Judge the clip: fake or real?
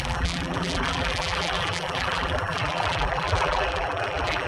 fake